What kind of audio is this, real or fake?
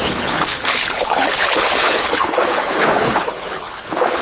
fake